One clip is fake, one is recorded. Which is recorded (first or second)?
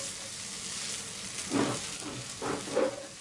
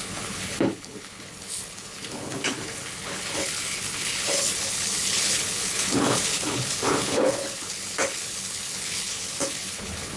first